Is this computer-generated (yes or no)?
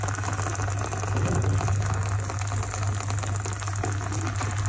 no